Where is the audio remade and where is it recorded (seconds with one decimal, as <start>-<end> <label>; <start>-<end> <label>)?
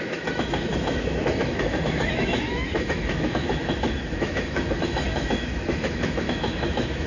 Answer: 0.0-7.1 remade